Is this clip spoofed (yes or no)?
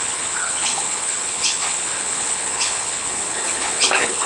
yes